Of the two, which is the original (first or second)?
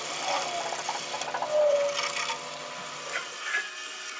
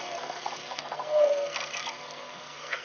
first